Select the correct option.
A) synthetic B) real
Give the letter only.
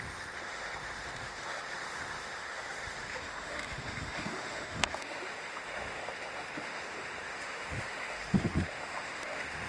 A